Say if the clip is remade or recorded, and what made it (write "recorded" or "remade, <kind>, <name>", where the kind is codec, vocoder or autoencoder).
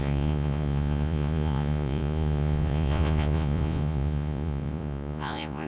remade, vocoder, Vocos